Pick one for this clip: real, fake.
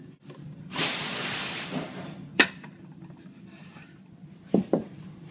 fake